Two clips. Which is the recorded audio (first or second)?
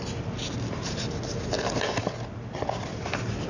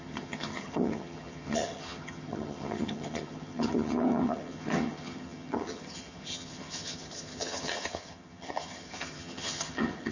first